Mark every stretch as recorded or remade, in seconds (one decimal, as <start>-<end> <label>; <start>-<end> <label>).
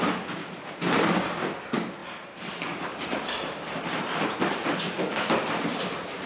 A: 0.0-0.4 recorded; 0.4-1.0 remade; 1.0-2.0 recorded; 2.0-3.2 remade; 3.2-6.3 recorded